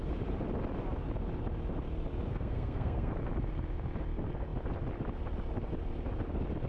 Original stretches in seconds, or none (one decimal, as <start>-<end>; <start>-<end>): 0.0-2.3; 3.1-6.7